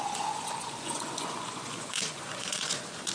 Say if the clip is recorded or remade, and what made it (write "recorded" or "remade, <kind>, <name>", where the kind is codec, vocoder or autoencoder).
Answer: remade, vocoder, Vocos